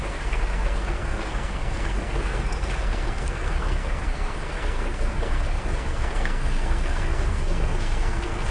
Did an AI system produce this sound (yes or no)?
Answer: yes